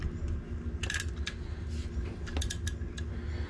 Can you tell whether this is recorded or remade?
recorded